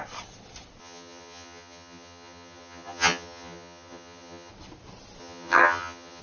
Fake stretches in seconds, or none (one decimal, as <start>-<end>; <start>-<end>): 0.8-4.5; 5.2-6.2